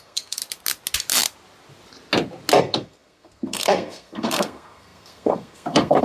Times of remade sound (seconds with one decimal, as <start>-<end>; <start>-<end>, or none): 0.0-0.4; 2.6-6.0